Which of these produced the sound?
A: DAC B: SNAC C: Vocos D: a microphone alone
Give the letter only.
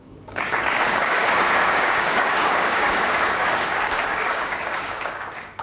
A